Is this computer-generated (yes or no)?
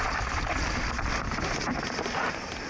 no